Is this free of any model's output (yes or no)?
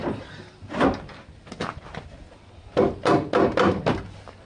yes